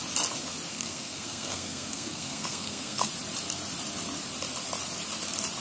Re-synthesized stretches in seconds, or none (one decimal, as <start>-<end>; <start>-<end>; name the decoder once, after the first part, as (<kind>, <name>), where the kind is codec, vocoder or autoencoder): 0.7-3.1 (codec, SNAC)